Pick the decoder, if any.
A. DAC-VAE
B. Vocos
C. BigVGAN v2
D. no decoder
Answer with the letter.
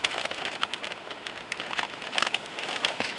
A